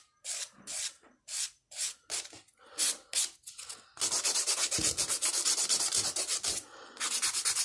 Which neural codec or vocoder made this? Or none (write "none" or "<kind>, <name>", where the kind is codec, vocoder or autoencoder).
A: none